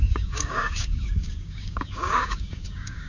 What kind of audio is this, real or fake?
fake